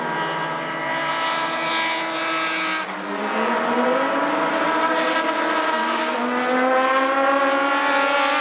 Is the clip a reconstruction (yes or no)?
no